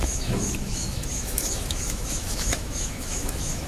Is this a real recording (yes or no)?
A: no